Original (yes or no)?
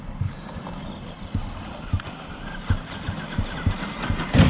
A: yes